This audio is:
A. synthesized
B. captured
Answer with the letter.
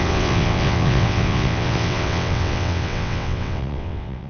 A